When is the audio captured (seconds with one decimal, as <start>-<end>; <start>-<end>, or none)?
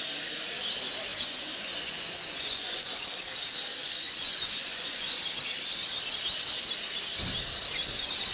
0.0-1.1; 2.9-3.8; 5.2-8.3